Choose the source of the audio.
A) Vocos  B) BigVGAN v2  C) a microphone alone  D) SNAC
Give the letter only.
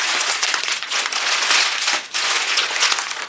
A